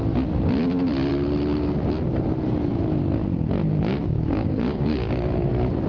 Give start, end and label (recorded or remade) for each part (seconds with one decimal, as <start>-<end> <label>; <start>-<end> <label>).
0.0-3.9 recorded; 3.9-5.5 remade; 5.5-5.9 recorded